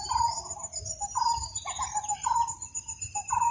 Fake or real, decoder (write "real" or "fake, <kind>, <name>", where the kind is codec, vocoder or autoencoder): real